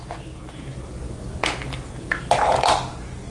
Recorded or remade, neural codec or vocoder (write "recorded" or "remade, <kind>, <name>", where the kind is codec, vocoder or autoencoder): recorded